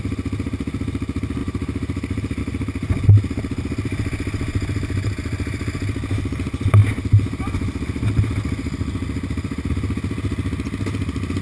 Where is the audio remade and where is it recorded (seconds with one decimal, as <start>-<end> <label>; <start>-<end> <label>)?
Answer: 0.0-1.4 recorded; 1.4-2.4 remade; 2.4-11.4 recorded